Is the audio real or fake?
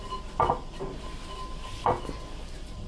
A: real